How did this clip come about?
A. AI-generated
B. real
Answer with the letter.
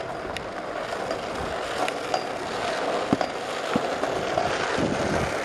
B